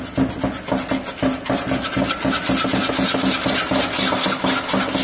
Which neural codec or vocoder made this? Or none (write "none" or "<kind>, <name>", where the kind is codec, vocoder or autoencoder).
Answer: none